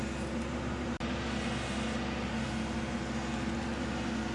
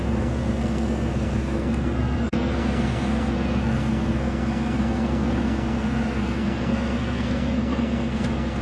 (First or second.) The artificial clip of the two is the second